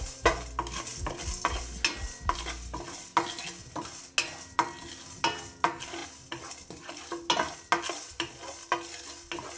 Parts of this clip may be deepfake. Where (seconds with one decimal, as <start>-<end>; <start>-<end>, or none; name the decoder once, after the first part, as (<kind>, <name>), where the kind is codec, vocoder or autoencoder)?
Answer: none